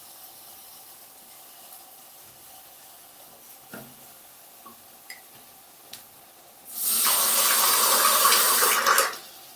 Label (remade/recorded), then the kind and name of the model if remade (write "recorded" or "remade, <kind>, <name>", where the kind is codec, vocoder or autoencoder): recorded